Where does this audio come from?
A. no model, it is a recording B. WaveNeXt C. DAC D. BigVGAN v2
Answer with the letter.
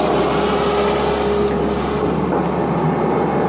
A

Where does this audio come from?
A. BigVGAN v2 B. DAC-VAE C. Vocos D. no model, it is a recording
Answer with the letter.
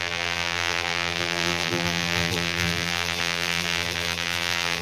A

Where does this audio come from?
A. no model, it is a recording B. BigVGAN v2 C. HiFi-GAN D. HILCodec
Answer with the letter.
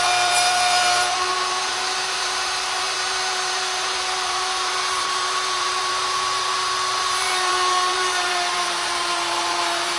B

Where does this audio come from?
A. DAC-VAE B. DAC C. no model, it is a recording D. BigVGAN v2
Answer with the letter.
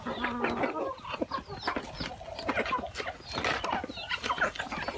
C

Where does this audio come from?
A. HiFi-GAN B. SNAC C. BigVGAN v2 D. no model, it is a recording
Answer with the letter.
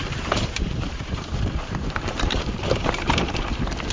C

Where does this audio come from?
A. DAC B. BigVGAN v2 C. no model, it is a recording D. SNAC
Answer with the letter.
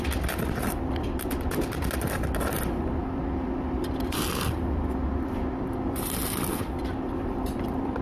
B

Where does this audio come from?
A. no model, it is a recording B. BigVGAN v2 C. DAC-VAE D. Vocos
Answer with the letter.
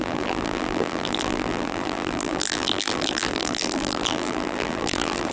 B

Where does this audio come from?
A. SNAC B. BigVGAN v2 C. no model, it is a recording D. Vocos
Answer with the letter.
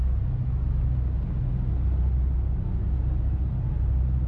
C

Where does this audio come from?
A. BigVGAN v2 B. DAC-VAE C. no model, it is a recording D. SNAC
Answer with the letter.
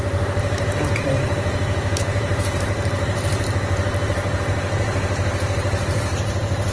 A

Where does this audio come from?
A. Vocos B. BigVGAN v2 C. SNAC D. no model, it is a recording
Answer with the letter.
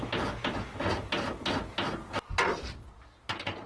D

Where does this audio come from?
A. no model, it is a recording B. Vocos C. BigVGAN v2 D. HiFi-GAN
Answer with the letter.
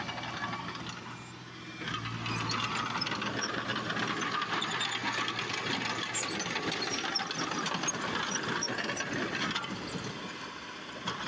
A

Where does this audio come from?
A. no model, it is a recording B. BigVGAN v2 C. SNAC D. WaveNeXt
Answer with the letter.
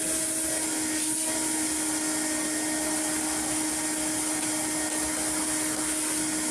A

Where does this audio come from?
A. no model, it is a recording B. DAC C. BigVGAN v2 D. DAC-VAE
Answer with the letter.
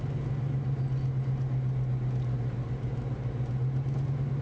A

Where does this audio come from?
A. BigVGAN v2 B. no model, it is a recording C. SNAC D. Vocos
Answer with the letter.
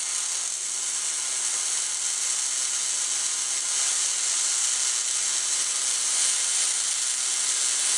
B